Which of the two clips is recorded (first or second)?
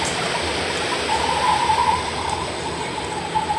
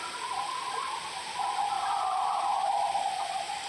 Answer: first